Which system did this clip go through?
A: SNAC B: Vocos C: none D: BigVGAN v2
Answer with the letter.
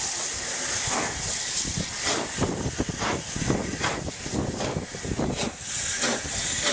C